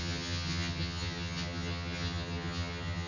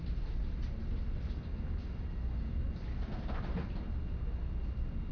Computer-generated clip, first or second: first